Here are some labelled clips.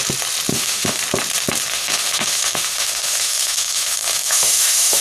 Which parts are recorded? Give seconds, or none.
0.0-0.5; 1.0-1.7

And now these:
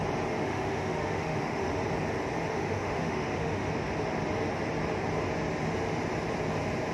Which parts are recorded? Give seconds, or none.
0.0-0.4; 1.7-2.5; 3.7-6.9

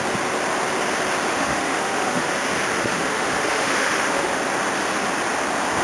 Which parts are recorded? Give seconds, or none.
0.0-1.3; 2.3-2.8; 4.3-5.8

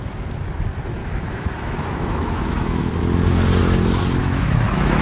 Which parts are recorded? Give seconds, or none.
0.0-1.0; 2.9-4.2

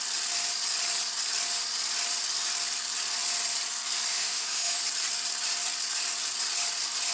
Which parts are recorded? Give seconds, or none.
0.0-4.1; 4.8-7.1